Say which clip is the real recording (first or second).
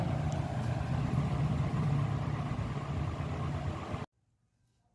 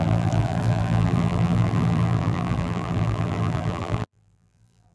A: first